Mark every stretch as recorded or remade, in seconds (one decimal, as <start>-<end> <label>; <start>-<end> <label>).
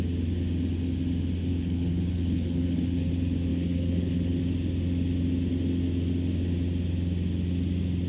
0.0-1.5 recorded; 1.5-3.1 remade; 3.1-3.5 recorded; 3.5-4.4 remade; 4.4-8.1 recorded